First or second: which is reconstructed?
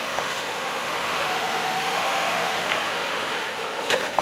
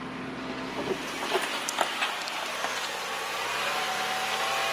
first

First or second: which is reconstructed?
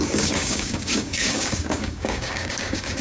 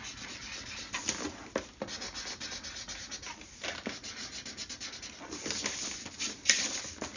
first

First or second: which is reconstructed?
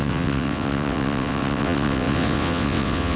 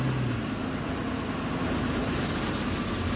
first